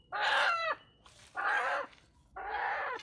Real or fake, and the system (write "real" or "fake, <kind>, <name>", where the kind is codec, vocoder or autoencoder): real